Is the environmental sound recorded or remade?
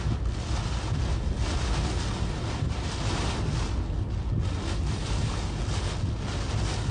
recorded